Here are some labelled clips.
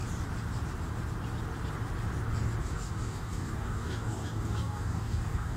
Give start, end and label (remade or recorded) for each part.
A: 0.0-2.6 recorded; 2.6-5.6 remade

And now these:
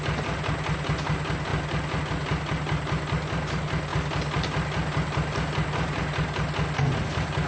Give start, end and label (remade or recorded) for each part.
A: 0.0-7.5 recorded

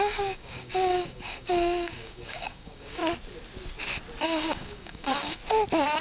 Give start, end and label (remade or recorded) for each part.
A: 0.0-3.0 remade; 3.0-4.2 recorded; 4.2-5.4 remade; 5.4-6.0 recorded

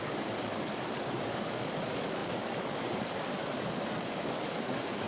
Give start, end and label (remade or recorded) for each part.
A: 0.0-5.1 remade

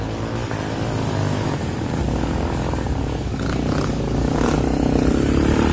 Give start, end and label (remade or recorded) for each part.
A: 0.0-1.2 recorded; 1.2-4.6 remade; 4.6-5.7 recorded

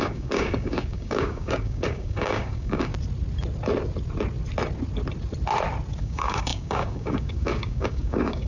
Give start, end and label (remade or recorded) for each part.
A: 0.0-2.9 remade; 2.9-6.0 recorded; 6.0-8.5 remade